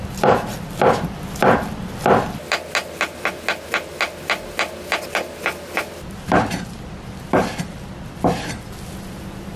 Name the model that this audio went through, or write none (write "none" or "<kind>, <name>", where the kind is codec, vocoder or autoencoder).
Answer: none